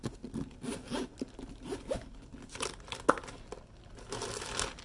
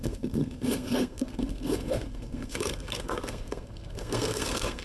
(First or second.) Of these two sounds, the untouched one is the first